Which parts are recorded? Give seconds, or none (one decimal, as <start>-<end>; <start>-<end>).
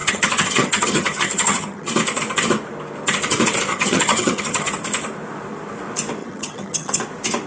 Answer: 1.9-3.7; 4.7-6.2; 7.0-7.5